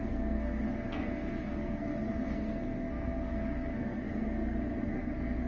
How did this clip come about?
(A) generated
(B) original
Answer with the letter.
A